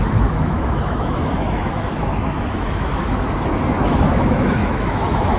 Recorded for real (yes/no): no